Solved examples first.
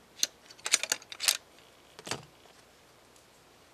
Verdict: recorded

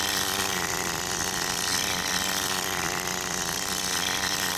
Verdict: recorded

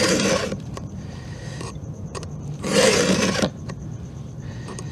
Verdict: remade